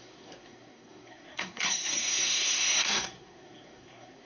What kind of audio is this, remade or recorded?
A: remade